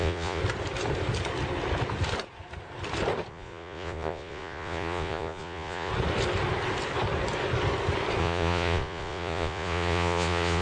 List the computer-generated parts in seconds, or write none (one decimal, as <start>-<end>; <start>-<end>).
0.0-0.4; 3.3-5.9; 8.2-10.6